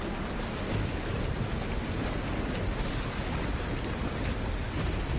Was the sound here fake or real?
real